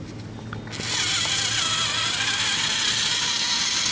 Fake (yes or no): no